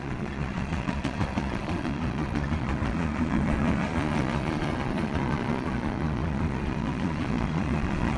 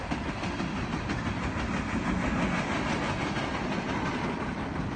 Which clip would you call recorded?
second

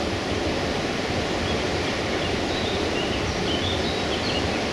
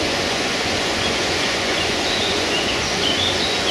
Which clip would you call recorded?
first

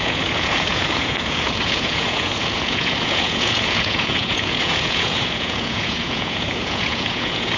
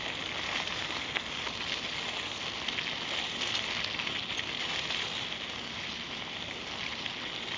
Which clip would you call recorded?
second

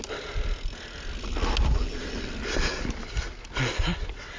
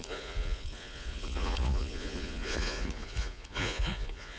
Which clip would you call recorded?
first